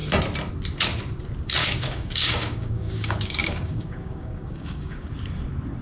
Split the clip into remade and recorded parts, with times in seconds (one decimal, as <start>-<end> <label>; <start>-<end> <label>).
0.0-1.6 recorded; 1.6-5.1 remade; 5.1-5.8 recorded